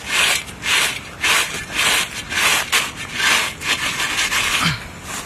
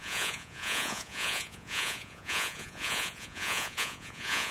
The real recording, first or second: first